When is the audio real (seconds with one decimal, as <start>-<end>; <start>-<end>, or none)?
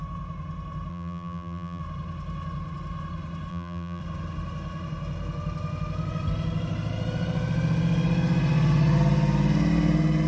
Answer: 0.0-0.9; 1.8-3.5; 4.0-10.3